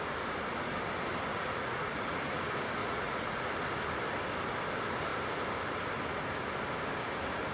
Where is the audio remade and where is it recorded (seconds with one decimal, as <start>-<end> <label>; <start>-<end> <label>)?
0.0-1.3 recorded; 1.3-2.4 remade; 2.4-2.8 recorded; 2.8-3.5 remade; 3.5-7.5 recorded

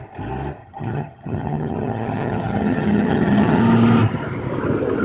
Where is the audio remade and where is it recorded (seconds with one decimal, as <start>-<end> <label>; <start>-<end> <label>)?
0.0-0.6 recorded; 0.6-3.6 remade; 3.6-5.0 recorded

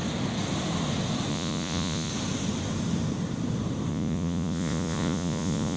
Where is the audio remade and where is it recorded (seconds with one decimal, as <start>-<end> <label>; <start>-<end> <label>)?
0.0-1.3 recorded; 1.3-2.1 remade; 2.1-3.9 recorded; 3.9-5.8 remade

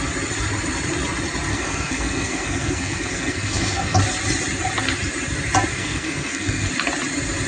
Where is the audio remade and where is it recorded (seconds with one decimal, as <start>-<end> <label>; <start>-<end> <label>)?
0.0-1.5 recorded; 1.5-4.0 remade; 4.0-5.7 recorded; 5.7-6.7 remade; 6.7-7.5 recorded

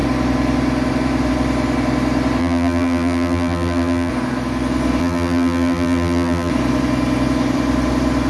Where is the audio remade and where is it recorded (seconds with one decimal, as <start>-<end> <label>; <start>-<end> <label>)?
0.0-2.4 recorded; 2.4-4.1 remade; 4.1-5.0 recorded; 5.0-6.5 remade; 6.5-8.3 recorded

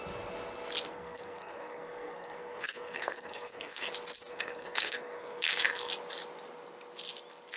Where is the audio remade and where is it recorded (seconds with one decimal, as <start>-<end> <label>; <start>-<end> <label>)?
0.0-0.9 recorded; 0.9-3.9 remade; 3.9-4.3 recorded; 4.3-5.9 remade; 5.9-7.6 recorded